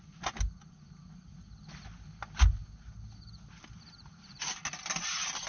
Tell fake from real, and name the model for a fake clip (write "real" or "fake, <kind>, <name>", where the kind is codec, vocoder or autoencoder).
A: real